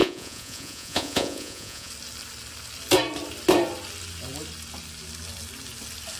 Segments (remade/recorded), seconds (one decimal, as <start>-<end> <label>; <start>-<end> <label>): 0.0-1.9 remade; 1.9-6.2 recorded